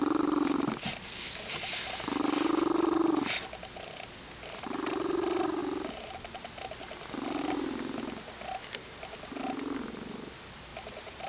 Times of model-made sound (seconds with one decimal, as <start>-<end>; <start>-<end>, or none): none